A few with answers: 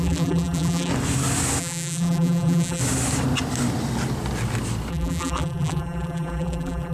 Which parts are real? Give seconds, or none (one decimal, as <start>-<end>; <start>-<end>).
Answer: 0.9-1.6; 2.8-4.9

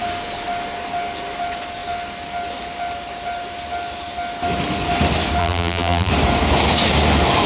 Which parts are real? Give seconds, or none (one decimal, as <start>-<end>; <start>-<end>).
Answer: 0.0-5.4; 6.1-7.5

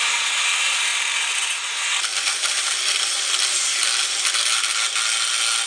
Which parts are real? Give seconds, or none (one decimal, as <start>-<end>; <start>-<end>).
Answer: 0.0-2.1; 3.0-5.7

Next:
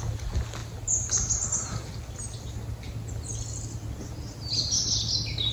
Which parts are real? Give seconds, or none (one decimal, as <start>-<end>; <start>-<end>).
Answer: 0.0-5.5

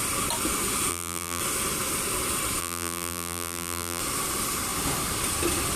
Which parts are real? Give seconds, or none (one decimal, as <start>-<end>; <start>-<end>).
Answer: 0.0-0.9; 1.4-2.6; 4.0-5.8

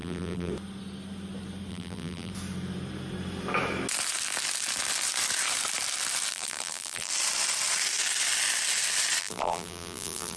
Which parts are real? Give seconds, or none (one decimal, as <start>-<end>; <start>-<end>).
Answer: 0.5-1.7; 2.3-6.3; 7.1-9.2

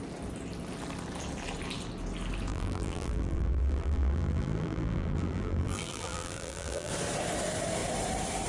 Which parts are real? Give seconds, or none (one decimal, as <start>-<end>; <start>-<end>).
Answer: 0.0-2.5; 6.9-8.5

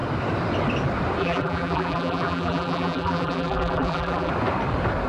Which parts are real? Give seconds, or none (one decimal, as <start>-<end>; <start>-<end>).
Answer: 0.0-1.2; 4.3-5.1